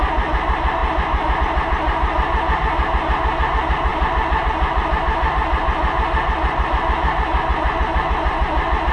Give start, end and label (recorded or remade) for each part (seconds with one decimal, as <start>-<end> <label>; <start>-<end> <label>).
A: 0.0-8.9 recorded